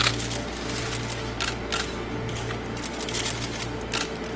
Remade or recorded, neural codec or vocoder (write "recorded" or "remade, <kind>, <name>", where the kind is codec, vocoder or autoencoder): recorded